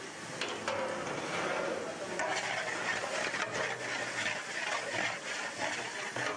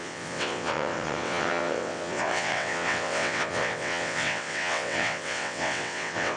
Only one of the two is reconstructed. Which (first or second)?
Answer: second